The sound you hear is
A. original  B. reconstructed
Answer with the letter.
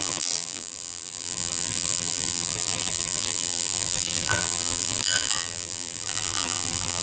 B